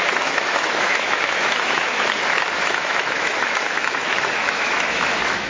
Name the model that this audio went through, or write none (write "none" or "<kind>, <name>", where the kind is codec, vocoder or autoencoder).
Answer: autoencoder, DAC-VAE